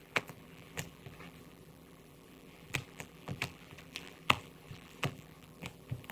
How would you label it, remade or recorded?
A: remade